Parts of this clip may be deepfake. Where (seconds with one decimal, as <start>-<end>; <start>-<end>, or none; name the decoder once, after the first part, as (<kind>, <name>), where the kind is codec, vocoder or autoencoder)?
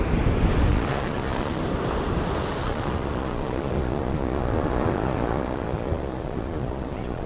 0.7-1.6 (vocoder, Vocos); 2.6-7.3